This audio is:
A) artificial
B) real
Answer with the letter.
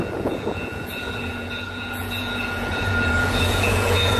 A